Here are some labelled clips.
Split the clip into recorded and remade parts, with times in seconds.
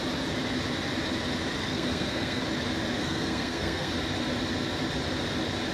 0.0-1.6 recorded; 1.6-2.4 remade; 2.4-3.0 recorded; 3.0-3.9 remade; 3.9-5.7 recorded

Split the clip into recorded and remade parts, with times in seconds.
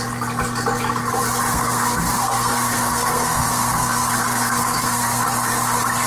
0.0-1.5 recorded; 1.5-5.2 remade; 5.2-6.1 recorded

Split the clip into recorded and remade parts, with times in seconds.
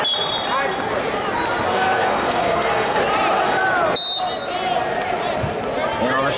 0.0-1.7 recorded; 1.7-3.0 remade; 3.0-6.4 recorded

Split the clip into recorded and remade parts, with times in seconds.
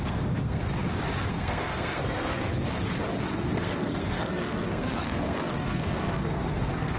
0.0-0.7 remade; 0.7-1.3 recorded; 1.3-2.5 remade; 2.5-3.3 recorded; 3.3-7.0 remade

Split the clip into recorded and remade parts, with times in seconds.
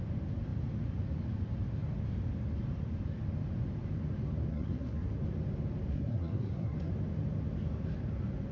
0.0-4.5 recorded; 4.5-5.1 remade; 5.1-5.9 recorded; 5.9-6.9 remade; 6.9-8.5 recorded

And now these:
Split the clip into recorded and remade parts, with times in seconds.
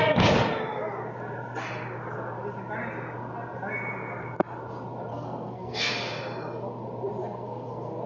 0.0-5.1 recorded; 5.1-5.9 remade; 5.9-7.2 recorded; 7.2-8.1 remade